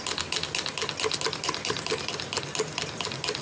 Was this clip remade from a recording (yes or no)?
no